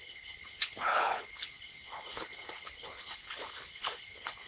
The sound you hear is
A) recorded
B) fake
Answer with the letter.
B